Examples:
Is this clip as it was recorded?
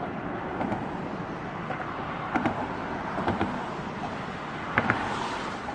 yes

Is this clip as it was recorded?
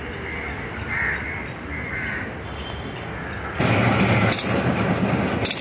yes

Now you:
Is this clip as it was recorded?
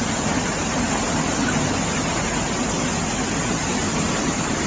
yes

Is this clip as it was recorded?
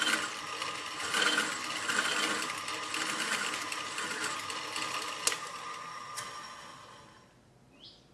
yes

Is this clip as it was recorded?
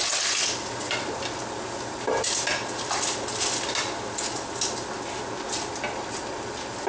yes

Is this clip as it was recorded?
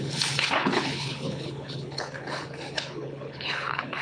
no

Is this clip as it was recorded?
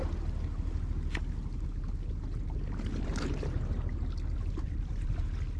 yes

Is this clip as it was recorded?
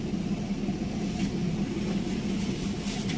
yes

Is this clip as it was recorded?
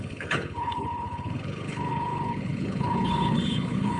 no